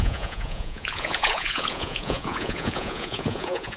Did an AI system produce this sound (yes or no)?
yes